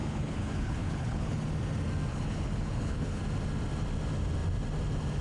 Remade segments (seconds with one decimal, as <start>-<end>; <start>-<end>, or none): 0.0-1.4; 2.1-3.2